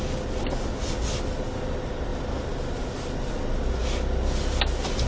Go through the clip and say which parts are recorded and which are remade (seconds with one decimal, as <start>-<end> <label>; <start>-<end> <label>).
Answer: 0.0-5.1 recorded